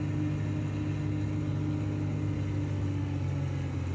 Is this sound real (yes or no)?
yes